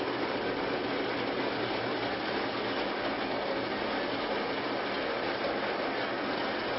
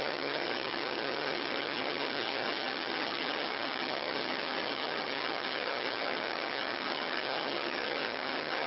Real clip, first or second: first